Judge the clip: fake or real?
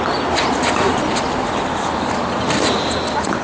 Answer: real